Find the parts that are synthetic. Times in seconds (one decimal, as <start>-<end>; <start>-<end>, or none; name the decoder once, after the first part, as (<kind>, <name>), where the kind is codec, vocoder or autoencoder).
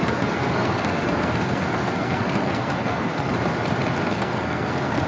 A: 0.0-3.3 (codec, SNAC); 4.1-5.1